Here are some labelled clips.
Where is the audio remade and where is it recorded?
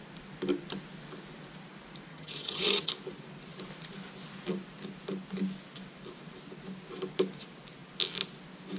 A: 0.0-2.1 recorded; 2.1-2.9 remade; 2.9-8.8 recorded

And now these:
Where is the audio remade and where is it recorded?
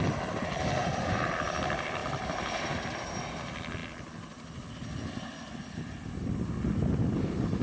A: 0.0-7.6 recorded